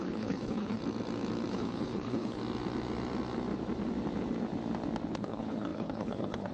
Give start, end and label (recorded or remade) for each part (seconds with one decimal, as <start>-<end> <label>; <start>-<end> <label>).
0.0-0.8 remade; 0.8-1.5 recorded; 1.5-2.4 remade; 2.4-5.1 recorded; 5.1-6.5 remade